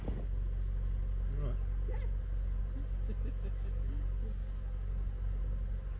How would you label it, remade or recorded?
recorded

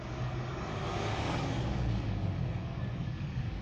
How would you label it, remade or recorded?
remade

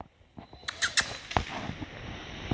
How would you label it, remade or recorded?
recorded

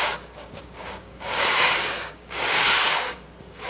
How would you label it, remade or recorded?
remade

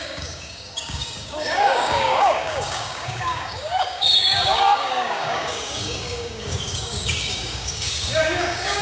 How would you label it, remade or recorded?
remade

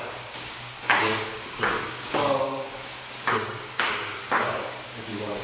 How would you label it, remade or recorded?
remade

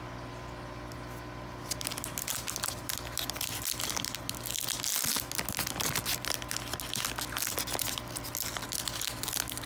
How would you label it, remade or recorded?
recorded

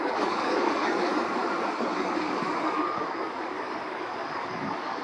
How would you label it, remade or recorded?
remade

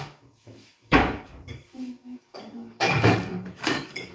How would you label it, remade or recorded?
remade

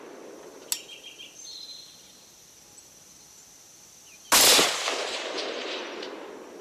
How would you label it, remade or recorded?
recorded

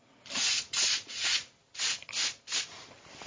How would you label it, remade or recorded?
recorded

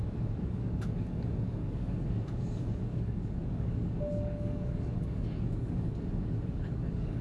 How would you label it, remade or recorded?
remade